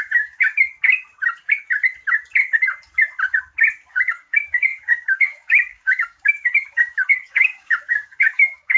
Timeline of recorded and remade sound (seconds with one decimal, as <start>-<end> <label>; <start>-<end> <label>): 0.0-0.7 remade; 0.7-3.9 recorded; 3.9-8.8 remade